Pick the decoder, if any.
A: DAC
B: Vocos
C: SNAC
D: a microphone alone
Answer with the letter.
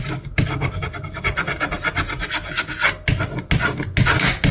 D